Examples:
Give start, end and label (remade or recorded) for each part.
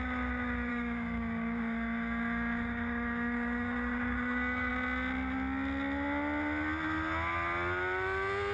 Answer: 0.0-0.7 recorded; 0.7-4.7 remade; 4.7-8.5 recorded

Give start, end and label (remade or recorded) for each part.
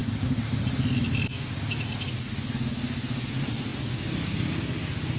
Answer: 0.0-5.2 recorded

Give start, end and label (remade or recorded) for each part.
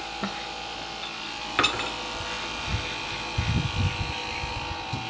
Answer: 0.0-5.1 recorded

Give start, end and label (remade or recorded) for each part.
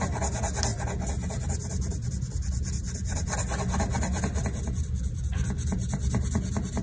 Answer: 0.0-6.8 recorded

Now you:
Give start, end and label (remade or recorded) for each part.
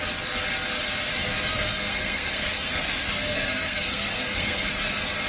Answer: 0.0-1.5 recorded; 1.5-4.7 remade; 4.7-5.3 recorded